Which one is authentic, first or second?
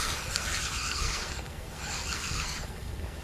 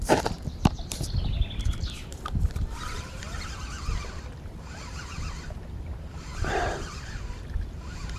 second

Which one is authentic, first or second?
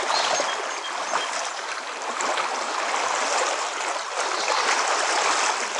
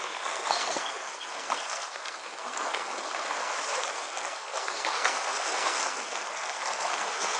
first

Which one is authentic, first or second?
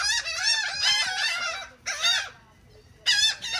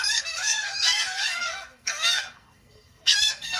first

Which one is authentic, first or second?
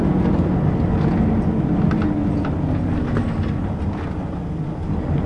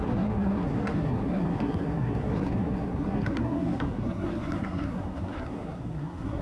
first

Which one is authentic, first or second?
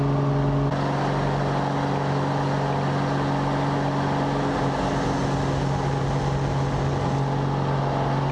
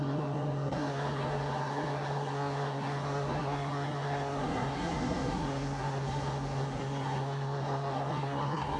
first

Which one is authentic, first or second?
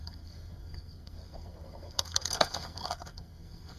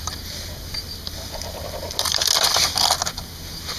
second